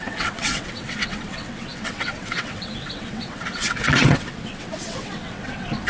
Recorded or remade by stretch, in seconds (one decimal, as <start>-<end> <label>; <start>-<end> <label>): 0.0-5.9 remade